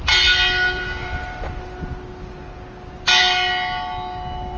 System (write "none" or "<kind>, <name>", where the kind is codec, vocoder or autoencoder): none